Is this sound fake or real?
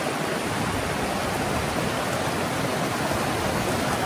real